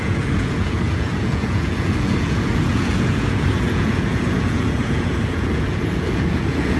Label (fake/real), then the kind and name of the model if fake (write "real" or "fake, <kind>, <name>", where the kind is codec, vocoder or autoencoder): fake, vocoder, Vocos